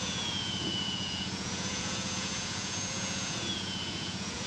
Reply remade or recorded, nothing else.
remade